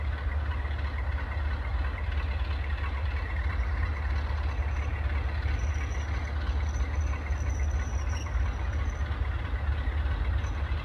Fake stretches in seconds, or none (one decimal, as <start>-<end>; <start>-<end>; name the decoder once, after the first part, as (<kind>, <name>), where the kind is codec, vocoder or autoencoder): none